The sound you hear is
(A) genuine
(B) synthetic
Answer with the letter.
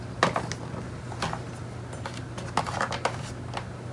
A